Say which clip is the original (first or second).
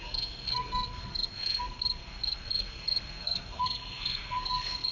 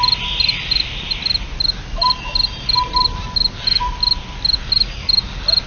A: second